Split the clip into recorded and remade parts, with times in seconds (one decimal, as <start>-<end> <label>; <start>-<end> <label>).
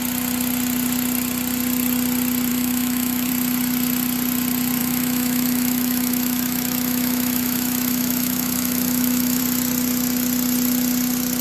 0.0-2.5 recorded; 2.5-3.3 remade; 3.3-4.8 recorded; 4.8-9.4 remade; 9.4-11.4 recorded